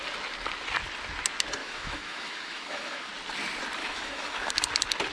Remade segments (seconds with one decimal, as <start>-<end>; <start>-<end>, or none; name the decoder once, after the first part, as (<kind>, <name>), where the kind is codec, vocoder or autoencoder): 1.6-3.1 (autoencoder, DAC-VAE); 3.8-4.5